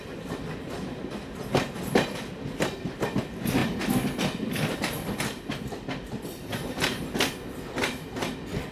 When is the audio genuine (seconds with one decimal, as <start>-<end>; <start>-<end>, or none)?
0.0-8.7